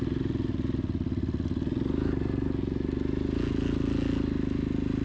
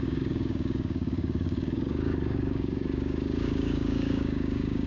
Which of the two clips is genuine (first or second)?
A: first